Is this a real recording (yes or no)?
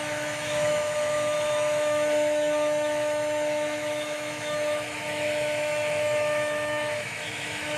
no